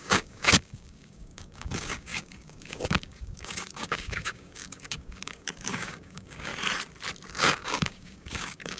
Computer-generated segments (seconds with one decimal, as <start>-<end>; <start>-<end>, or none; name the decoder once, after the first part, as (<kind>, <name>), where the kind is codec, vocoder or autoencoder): 0.0-6.5 (codec, DAC); 7.3-8.8